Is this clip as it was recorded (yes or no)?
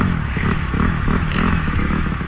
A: no